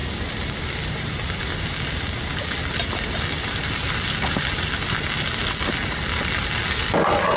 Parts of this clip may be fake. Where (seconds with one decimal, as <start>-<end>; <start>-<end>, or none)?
none